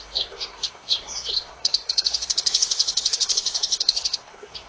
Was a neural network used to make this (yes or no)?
yes